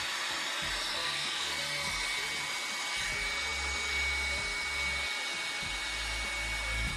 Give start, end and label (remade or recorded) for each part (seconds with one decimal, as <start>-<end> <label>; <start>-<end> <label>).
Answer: 0.0-0.9 recorded; 0.9-1.6 remade; 1.6-7.0 recorded